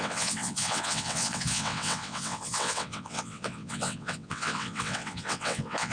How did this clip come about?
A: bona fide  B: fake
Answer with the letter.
B